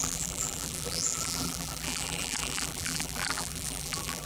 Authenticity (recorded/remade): remade